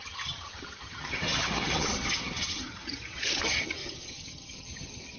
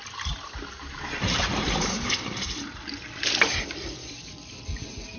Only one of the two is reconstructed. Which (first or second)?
first